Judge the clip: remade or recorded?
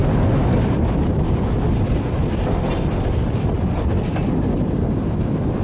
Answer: recorded